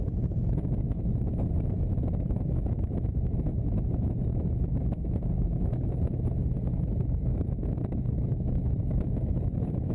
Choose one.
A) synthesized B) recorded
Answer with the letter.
A